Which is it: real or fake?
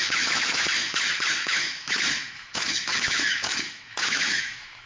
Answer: fake